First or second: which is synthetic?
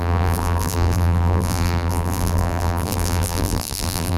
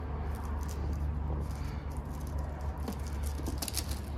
first